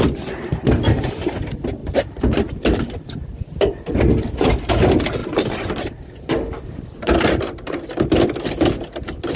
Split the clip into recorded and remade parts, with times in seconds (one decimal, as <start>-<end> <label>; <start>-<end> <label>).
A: 0.0-1.8 recorded; 1.8-4.7 remade; 4.7-5.2 recorded; 5.2-7.3 remade; 7.3-9.4 recorded

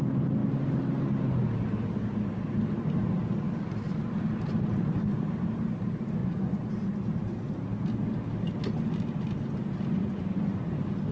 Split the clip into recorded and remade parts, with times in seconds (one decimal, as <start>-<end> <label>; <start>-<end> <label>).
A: 0.0-6.2 recorded; 6.2-6.7 remade; 6.7-10.0 recorded; 10.0-10.7 remade; 10.7-11.1 recorded

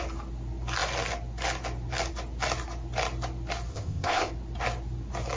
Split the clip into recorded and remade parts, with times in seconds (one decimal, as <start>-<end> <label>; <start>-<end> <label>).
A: 0.0-3.7 recorded; 3.7-4.3 remade; 4.3-5.4 recorded

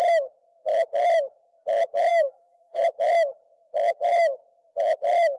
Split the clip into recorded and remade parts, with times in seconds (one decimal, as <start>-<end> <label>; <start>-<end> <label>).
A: 0.0-2.1 recorded; 2.1-2.8 remade; 2.8-5.4 recorded